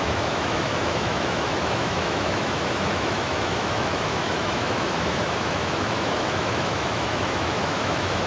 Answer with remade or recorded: remade